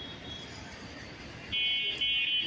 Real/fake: real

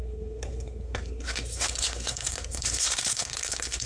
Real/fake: fake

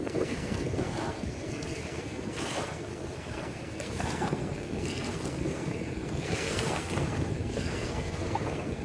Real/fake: fake